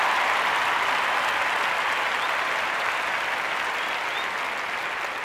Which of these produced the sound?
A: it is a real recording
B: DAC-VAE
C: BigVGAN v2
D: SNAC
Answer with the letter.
A